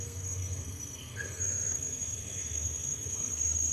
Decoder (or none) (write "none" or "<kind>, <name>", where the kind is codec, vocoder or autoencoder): codec, SNAC